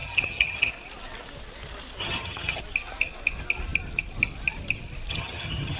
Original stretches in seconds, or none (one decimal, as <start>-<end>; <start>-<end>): 0.7-2.0; 2.6-5.1

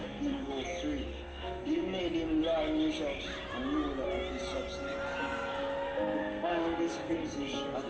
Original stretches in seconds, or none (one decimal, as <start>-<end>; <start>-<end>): 0.5-1.1; 2.0-6.2; 7.1-7.9

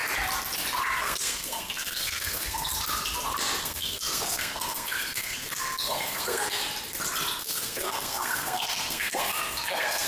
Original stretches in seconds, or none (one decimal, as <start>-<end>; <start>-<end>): 0.0-1.0; 2.7-3.6; 6.6-7.4

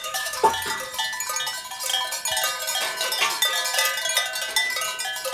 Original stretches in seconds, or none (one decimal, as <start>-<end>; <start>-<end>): 0.5-5.3

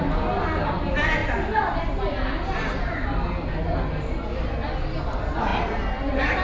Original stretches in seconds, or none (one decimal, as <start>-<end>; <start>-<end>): 0.0-6.4